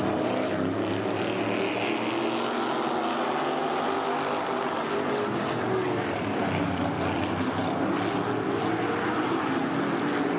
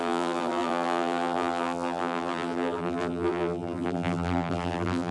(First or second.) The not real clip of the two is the second